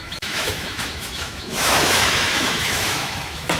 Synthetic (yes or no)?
yes